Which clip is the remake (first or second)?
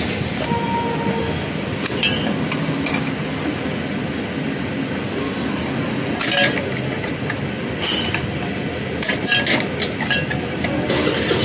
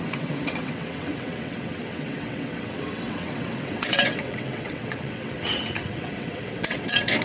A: second